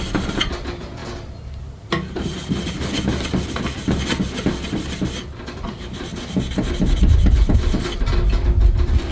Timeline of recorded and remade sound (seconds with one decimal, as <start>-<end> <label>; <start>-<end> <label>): 0.0-9.1 recorded

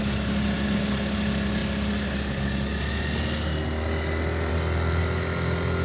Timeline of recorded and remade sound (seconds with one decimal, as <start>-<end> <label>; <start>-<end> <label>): 0.0-5.8 recorded

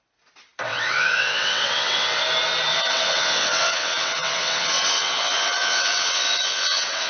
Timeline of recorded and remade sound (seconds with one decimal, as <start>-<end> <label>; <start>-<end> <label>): 0.0-0.7 recorded; 0.7-2.2 remade; 2.2-2.7 recorded; 2.7-7.1 remade

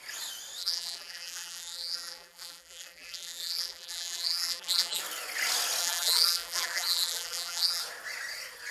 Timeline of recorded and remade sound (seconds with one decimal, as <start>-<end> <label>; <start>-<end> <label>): 0.0-0.6 recorded; 0.6-5.0 remade; 5.0-5.8 recorded; 5.8-7.8 remade; 7.8-8.7 recorded

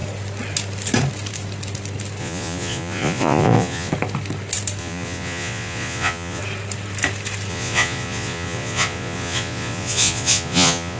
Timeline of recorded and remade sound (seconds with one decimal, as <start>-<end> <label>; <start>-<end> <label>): 0.0-2.2 recorded; 2.2-3.9 remade; 3.9-4.8 recorded; 4.8-6.4 remade; 6.4-7.5 recorded; 7.5-11.0 remade

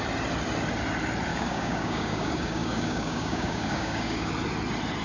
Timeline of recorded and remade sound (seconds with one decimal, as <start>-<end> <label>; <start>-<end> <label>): 0.0-1.3 recorded; 1.3-4.3 remade; 4.3-5.0 recorded

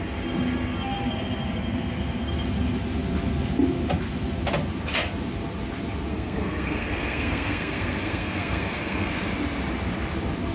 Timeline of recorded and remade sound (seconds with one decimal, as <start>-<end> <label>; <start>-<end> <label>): 0.0-6.1 recorded; 6.1-9.1 remade; 9.1-10.5 recorded